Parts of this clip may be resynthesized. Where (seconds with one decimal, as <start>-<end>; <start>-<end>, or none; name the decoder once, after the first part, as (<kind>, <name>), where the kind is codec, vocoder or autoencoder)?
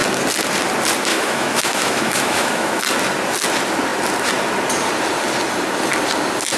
1.1-2.8 (autoencoder, DAC-VAE)